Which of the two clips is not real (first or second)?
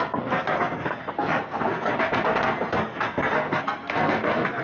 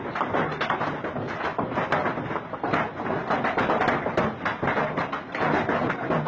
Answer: first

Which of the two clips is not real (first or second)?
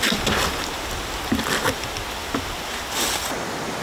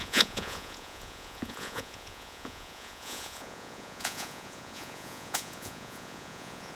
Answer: second